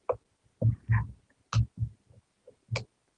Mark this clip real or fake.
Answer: real